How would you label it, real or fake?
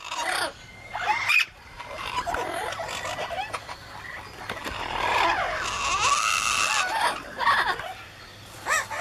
real